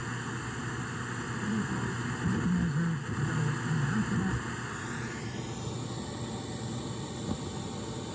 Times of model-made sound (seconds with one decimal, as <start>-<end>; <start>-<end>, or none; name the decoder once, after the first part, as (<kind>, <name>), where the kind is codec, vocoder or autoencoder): none